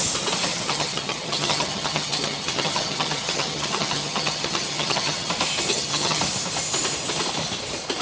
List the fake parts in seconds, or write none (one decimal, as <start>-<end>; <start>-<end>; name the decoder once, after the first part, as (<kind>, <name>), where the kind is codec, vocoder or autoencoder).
0.5-5.3 (vocoder, HiFi-GAN); 5.7-6.2